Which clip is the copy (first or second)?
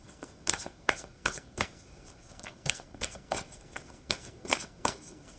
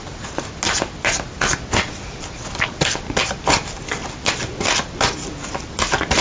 first